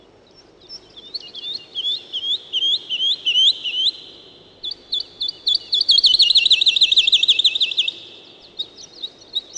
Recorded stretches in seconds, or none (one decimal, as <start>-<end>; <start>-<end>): 0.0-9.6